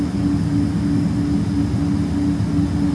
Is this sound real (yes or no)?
yes